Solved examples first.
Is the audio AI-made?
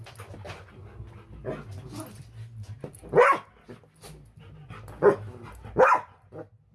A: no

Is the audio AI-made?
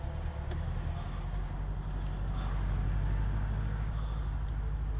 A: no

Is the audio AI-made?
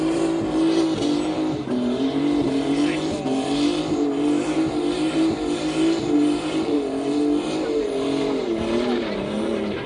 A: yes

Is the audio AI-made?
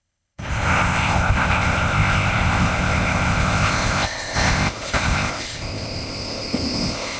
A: yes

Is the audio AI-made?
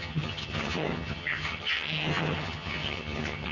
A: yes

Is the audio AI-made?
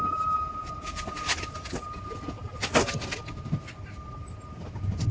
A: no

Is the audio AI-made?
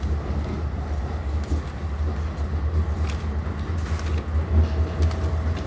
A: no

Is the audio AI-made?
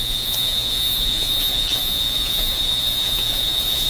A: yes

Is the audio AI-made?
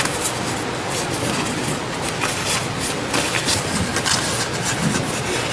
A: no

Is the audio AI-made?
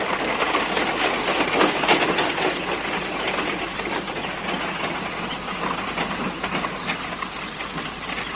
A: yes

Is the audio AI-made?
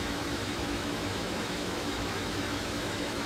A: yes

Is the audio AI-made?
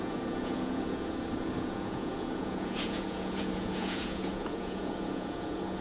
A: yes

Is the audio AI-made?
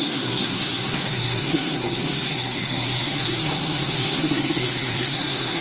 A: yes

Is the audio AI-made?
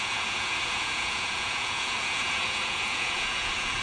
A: yes